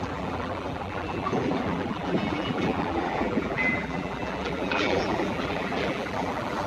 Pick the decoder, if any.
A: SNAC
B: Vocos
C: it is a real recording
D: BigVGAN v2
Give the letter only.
D